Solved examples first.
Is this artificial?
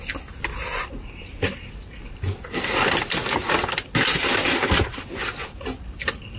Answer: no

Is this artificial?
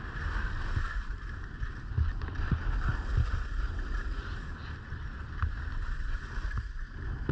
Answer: no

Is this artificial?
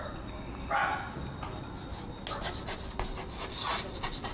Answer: no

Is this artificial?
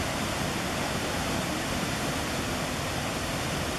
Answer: yes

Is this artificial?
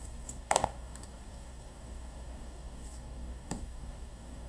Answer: yes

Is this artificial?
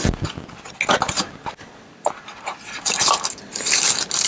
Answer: no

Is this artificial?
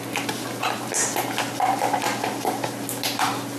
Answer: no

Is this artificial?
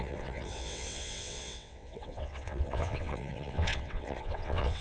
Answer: yes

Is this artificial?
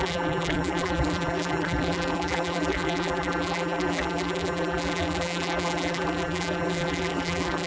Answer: yes